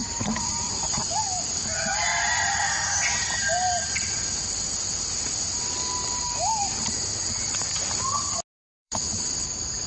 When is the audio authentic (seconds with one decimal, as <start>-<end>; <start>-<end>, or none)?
1.2-2.1; 6.9-8.8; 9.4-9.9